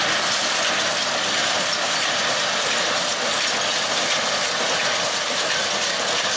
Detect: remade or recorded recorded